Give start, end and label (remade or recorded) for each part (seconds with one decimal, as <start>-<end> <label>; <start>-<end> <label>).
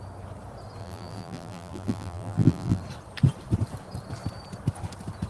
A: 0.0-0.8 recorded; 0.8-2.8 remade; 2.8-5.3 recorded